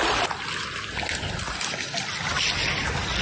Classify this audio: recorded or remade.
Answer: recorded